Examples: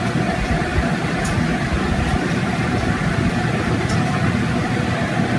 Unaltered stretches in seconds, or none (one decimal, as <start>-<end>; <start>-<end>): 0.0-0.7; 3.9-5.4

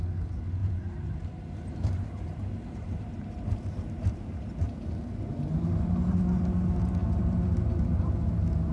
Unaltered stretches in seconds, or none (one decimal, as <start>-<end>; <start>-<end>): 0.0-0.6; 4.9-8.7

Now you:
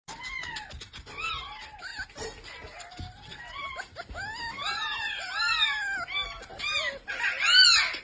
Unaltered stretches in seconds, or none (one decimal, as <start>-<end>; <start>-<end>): 0.0-1.9; 3.6-8.0